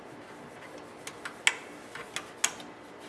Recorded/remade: recorded